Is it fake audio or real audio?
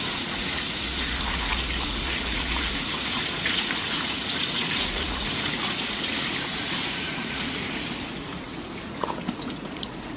fake